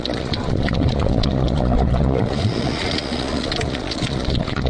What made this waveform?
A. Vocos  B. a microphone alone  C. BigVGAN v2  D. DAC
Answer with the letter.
A